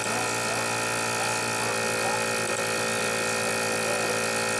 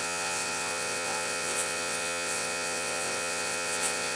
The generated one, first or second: second